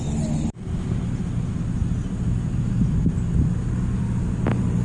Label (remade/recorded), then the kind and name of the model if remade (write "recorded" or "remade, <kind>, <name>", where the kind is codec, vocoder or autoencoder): recorded